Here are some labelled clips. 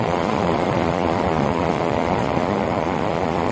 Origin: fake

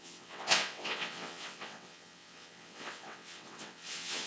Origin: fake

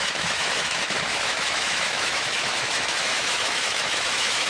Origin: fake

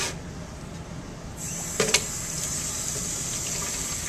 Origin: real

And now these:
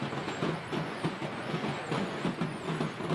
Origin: fake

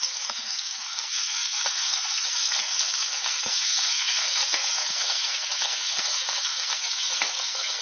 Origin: fake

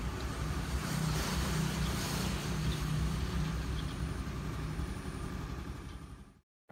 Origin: fake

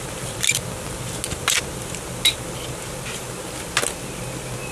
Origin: real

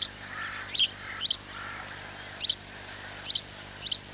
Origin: real